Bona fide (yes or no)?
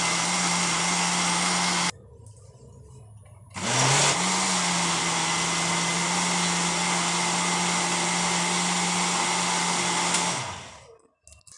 yes